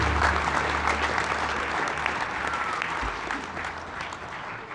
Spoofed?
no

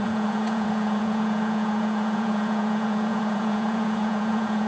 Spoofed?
yes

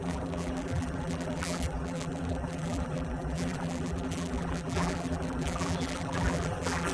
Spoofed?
yes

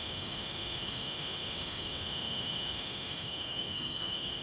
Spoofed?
yes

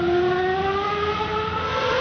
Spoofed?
no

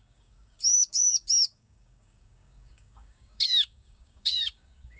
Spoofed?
yes